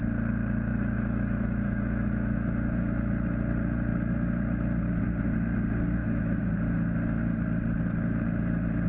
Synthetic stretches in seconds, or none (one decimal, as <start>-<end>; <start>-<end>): 0.7-3.1; 6.0-6.5